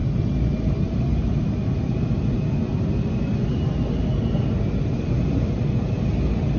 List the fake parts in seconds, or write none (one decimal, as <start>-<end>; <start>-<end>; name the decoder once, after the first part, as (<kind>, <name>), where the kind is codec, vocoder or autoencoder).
0.0-1.5 (vocoder, BigVGAN v2)